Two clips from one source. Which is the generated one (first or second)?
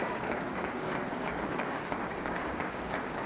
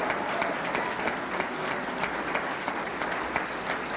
first